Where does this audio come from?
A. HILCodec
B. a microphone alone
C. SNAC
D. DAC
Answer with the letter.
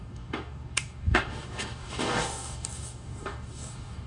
D